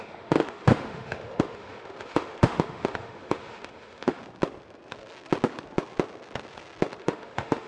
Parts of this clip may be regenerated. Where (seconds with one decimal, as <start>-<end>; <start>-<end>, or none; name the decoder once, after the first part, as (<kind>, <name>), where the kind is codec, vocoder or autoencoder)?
0.0-4.2 (autoencoder, DAC-VAE); 7.0-7.7